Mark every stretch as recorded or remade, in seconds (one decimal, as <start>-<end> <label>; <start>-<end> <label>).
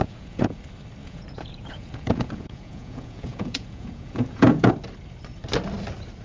0.0-0.6 remade; 0.6-1.0 recorded; 1.0-4.7 remade; 4.7-6.2 recorded